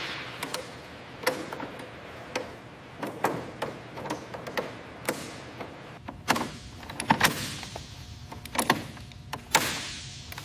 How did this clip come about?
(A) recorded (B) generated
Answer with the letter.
A